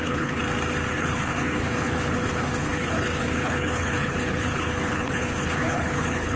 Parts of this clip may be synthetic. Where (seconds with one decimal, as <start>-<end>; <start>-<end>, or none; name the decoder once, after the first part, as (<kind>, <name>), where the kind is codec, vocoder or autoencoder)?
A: 0.0-0.4 (codec, HILCodec); 0.9-6.4